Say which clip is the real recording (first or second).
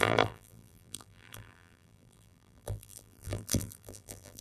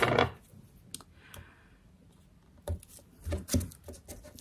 second